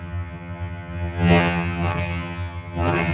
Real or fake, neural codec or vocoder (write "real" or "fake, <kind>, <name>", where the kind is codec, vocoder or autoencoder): fake, vocoder, HiFi-GAN